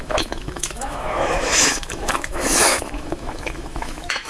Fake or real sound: fake